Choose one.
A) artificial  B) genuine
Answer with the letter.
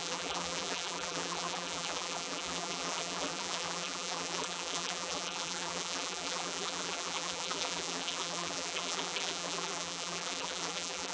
A